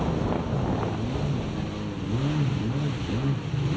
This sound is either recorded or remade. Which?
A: recorded